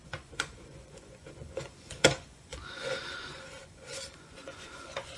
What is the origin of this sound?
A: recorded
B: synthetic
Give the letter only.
B